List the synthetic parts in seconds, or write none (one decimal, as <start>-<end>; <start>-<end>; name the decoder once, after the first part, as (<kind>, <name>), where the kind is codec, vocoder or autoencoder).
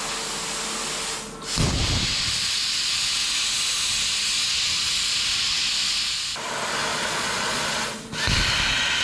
6.9-7.6 (vocoder, Vocos)